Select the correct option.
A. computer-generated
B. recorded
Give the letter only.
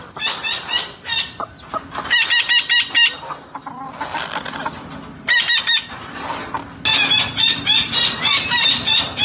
B